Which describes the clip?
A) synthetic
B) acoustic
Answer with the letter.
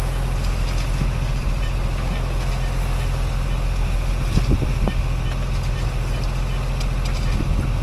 B